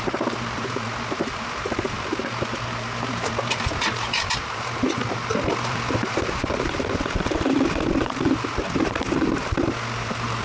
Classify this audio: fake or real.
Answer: fake